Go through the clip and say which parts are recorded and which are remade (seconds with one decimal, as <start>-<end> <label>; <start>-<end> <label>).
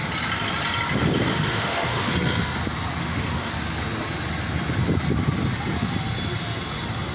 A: 0.0-1.3 recorded; 1.3-2.1 remade; 2.1-3.0 recorded; 3.0-3.5 remade; 3.5-7.1 recorded